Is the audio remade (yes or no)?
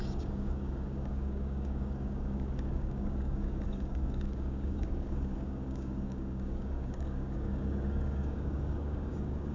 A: yes